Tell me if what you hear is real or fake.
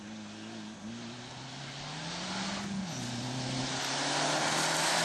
real